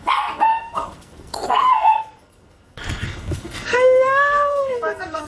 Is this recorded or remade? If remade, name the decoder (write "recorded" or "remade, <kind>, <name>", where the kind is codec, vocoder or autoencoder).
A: remade, codec, SNAC